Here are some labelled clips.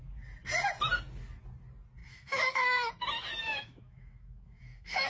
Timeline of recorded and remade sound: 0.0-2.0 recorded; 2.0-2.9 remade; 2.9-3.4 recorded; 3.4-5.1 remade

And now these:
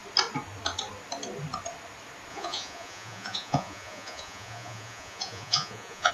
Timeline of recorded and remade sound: 0.0-2.3 recorded; 2.3-6.1 remade

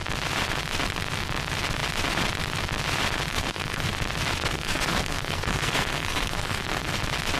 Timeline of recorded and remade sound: 0.0-3.3 recorded; 3.3-3.9 remade; 3.9-4.4 recorded; 4.4-7.0 remade; 7.0-7.4 recorded

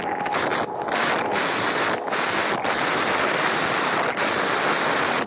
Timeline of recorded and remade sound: 0.0-5.3 recorded

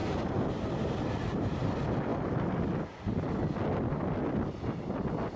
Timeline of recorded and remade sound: 0.0-5.4 recorded

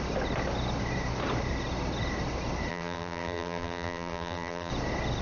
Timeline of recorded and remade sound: 0.0-2.7 recorded; 2.7-4.7 remade; 4.7-5.2 recorded

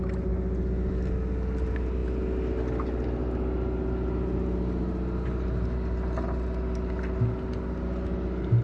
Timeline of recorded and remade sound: 0.0-8.6 recorded